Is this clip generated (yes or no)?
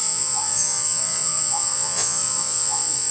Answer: yes